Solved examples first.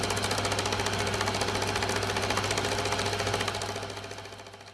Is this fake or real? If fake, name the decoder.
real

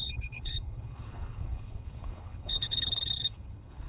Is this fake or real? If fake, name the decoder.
fake, codec, HILCodec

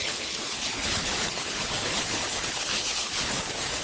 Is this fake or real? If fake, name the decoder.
fake, codec, HILCodec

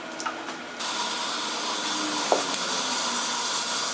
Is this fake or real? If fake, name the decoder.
real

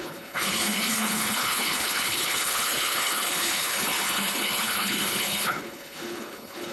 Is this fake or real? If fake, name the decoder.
fake, codec, HILCodec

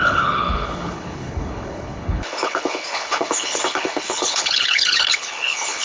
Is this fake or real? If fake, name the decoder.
fake, codec, HILCodec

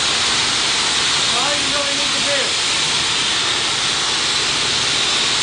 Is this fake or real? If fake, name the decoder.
real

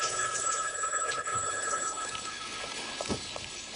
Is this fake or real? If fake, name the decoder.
fake, codec, HILCodec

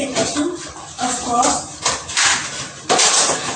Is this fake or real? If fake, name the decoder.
real